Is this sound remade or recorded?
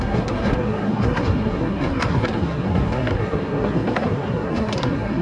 remade